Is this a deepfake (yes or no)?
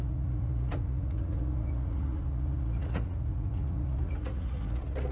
yes